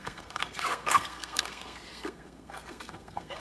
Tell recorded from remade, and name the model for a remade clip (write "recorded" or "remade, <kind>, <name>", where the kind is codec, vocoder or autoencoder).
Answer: remade, codec, SNAC